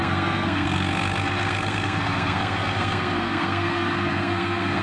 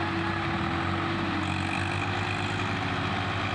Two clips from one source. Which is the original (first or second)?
second